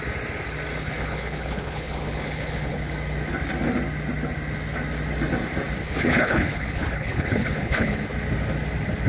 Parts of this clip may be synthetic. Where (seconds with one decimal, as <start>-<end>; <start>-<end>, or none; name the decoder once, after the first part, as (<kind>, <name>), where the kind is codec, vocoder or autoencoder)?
0.8-2.9 (codec, HILCodec); 5.8-8.0